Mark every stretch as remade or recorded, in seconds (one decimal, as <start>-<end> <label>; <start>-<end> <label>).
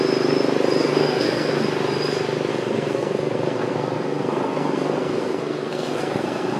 0.0-0.8 recorded; 0.8-1.6 remade; 1.6-2.5 recorded; 2.5-6.6 remade